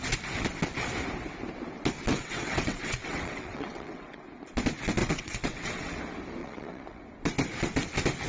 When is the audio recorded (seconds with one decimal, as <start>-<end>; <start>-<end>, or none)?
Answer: 0.0-2.1; 4.2-5.0; 6.0-6.4; 7.0-8.3